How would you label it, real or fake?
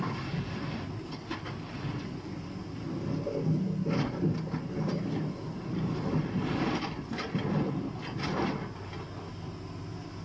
real